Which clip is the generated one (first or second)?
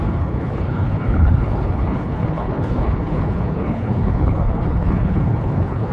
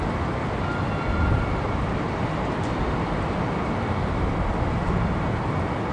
first